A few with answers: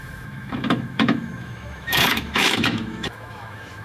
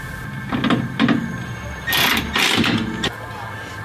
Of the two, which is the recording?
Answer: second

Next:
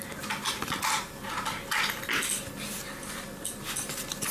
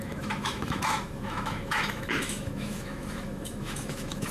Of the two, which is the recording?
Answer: first